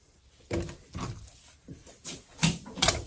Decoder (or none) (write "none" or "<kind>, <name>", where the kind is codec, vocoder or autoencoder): none